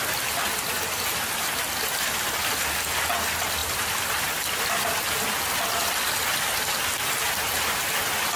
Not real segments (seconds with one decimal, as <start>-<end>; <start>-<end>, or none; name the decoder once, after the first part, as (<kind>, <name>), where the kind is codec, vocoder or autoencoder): 3.6-4.2 (vocoder, BigVGAN v2)